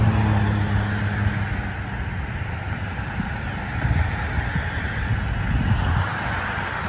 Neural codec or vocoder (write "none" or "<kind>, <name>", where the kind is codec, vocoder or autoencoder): none